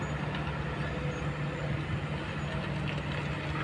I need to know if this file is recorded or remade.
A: recorded